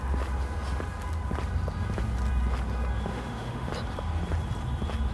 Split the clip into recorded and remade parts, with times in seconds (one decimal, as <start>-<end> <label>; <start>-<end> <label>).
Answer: 0.0-3.1 recorded; 3.1-3.7 remade; 3.7-5.1 recorded